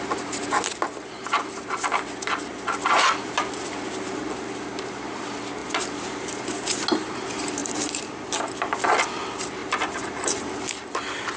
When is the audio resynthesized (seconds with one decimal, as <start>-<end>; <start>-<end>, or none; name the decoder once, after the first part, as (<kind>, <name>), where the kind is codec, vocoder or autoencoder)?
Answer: 2.5-4.2 (vocoder, BigVGAN v2); 5.6-6.2; 7.6-9.0; 9.6-11.4